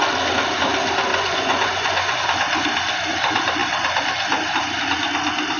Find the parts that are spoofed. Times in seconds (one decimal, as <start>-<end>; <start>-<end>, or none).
1.1-2.2